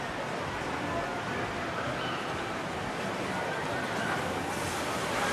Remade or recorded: recorded